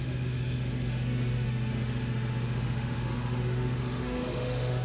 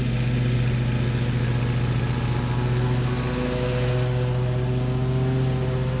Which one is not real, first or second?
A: first